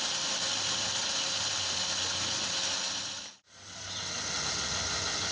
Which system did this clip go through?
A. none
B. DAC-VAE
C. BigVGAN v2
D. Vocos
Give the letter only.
C